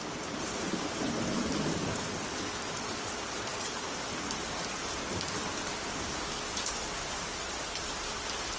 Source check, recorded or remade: recorded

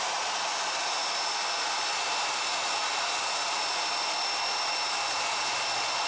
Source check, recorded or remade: recorded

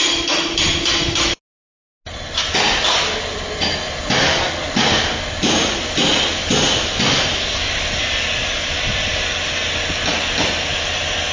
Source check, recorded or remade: recorded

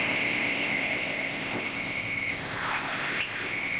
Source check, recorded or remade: remade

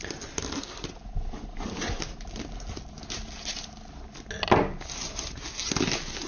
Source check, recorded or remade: recorded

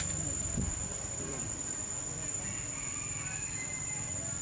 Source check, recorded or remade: recorded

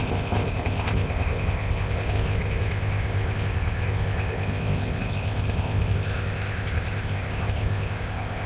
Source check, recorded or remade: remade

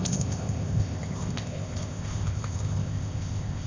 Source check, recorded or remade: remade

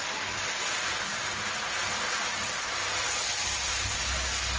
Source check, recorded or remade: recorded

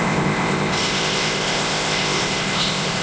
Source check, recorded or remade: remade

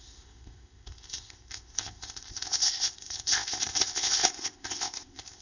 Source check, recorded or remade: remade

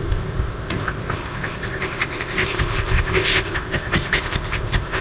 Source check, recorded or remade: remade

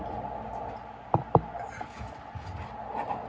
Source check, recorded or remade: recorded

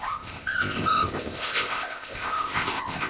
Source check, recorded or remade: remade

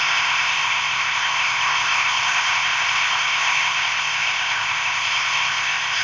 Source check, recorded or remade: remade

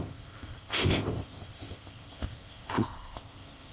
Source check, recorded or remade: remade